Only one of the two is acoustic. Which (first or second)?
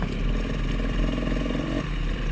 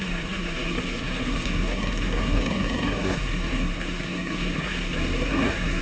first